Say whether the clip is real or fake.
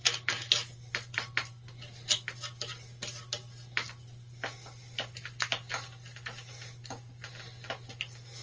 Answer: real